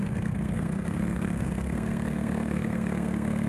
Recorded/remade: remade